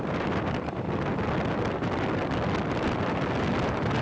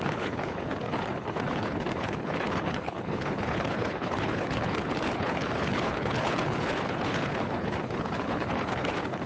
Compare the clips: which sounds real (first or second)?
first